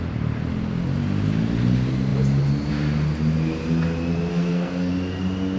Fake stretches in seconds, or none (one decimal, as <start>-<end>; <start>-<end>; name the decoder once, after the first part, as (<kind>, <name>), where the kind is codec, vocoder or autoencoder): 4.3-4.9 (codec, SNAC)